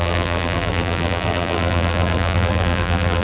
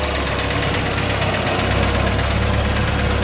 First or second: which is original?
second